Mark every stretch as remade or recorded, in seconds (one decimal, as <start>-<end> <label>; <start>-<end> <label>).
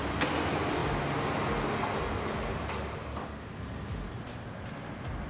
0.0-5.3 recorded